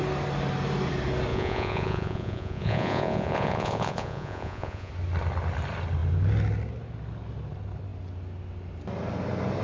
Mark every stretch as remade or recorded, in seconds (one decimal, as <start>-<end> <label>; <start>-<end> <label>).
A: 0.0-1.3 recorded; 1.3-4.9 remade; 4.9-9.6 recorded